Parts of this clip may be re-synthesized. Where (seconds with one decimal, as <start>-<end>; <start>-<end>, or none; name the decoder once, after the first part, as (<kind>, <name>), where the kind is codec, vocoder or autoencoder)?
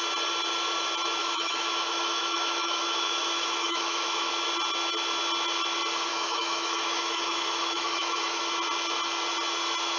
1.2-4.3 (autoencoder, DAC-VAE); 6.1-8.4